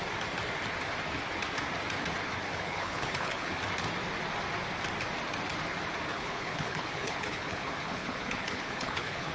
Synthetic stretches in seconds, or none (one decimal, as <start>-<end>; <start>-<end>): 2.5-3.6; 6.1-9.3